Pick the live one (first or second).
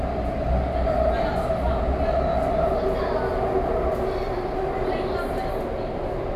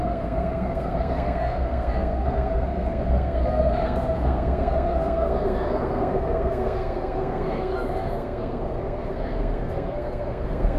first